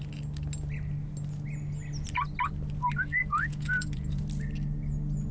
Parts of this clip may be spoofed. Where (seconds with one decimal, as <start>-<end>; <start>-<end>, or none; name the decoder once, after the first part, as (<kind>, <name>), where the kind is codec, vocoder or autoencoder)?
3.2-4.2 (vocoder, Vocos)